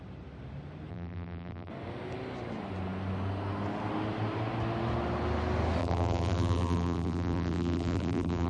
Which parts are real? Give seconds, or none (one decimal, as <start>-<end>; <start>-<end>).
0.0-0.9; 1.7-5.8